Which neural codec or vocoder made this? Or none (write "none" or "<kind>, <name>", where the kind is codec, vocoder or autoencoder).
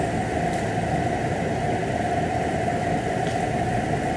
none